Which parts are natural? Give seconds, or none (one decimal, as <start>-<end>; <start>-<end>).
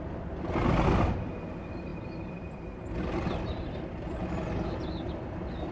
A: none